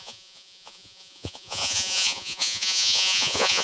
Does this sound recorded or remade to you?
remade